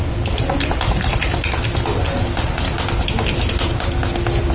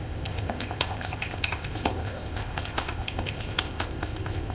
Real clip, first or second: first